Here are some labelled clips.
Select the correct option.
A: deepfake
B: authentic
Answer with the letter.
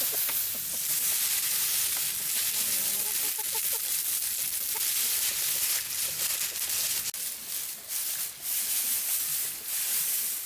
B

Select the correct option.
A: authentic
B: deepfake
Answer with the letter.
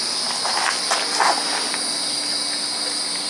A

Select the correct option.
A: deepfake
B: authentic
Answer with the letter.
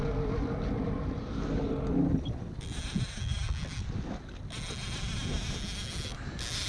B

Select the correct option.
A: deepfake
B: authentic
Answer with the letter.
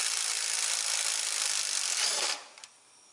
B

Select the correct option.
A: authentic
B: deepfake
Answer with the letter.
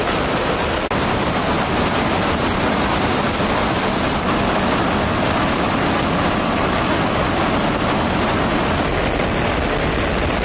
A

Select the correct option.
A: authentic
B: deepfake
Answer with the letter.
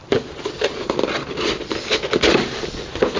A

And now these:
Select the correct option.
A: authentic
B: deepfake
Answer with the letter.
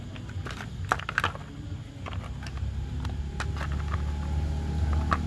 A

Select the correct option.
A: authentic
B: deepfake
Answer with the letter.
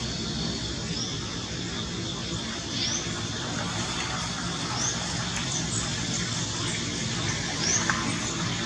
A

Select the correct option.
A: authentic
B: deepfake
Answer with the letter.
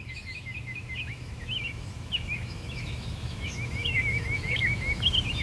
B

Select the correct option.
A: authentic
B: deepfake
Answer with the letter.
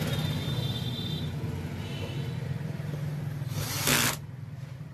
A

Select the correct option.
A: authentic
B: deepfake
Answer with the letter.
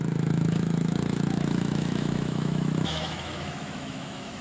B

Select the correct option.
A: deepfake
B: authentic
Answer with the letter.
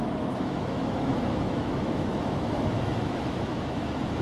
A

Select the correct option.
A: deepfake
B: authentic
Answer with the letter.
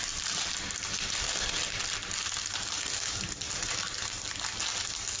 B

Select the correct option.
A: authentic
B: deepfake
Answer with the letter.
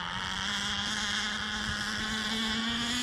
A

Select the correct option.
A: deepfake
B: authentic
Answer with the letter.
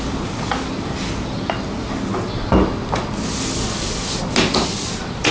B